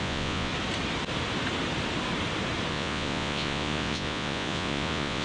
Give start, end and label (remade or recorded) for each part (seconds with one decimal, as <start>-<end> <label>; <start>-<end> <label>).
0.0-0.5 remade; 0.5-2.7 recorded; 2.7-5.2 remade